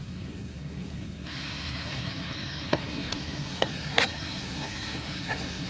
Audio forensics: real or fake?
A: fake